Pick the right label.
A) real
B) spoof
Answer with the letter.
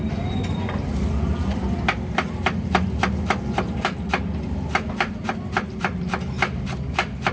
A